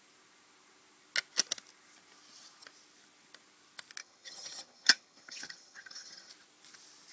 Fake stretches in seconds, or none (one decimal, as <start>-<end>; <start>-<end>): 4.0-6.3